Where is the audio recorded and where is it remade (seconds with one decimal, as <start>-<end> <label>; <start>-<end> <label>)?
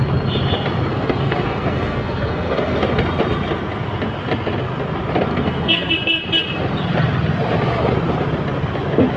0.0-0.9 recorded; 0.9-2.8 remade; 2.8-5.3 recorded; 5.3-5.9 remade; 5.9-9.2 recorded